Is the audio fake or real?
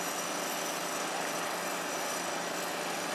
real